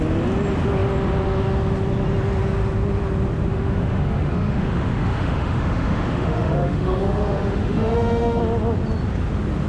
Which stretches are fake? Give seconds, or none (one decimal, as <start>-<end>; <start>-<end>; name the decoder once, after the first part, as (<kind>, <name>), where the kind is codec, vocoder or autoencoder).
3.5-8.4 (autoencoder, DAC-VAE)